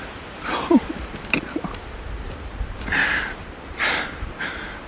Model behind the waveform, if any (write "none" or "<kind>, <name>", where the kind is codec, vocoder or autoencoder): vocoder, BigVGAN v2